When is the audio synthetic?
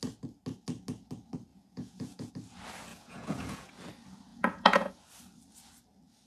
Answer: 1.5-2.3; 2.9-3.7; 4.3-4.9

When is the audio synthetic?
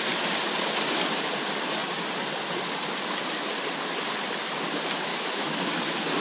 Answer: 5.1-5.8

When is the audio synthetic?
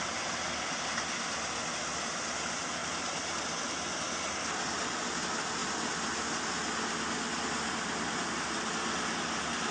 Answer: none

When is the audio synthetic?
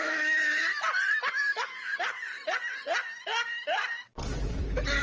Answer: 0.0-0.7; 1.3-1.9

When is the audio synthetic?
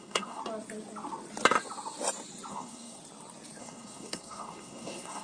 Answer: 0.0-0.4; 2.5-3.0; 3.6-5.2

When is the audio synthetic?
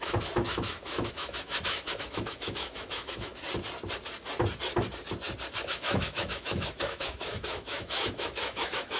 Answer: 0.0-3.3; 5.6-9.0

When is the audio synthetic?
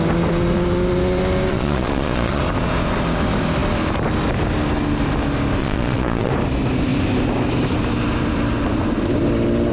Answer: 1.5-2.4; 5.6-6.3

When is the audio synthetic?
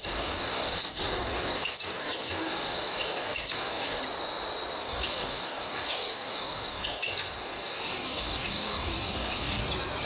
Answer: 0.0-4.0; 4.8-9.6